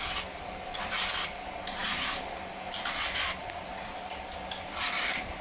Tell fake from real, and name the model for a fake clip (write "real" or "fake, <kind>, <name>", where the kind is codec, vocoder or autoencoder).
real